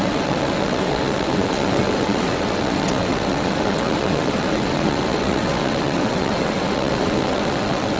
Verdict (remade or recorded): remade